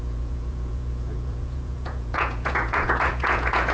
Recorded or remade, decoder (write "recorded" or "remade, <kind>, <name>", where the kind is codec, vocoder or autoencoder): remade, vocoder, Vocos